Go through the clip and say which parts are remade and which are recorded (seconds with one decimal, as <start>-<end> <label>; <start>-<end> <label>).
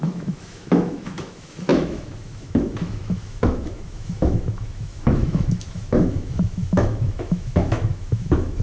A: 0.0-8.6 remade